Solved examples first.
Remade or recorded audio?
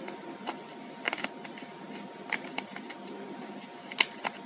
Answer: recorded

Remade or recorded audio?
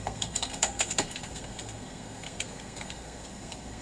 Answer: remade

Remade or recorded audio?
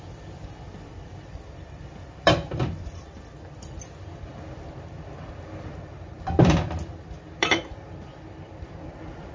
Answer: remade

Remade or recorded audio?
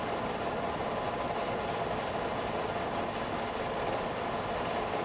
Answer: recorded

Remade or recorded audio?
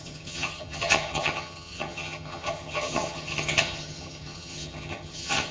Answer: remade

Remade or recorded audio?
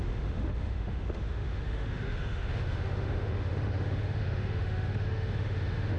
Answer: remade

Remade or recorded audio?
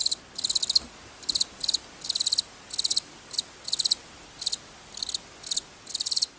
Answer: recorded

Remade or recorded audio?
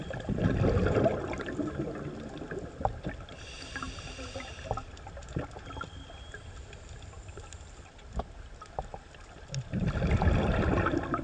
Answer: recorded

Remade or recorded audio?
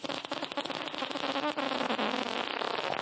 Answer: recorded